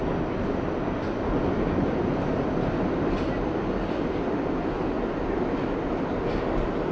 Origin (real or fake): real